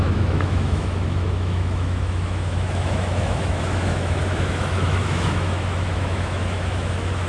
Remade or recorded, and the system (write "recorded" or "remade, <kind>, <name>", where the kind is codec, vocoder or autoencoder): remade, autoencoder, DAC-VAE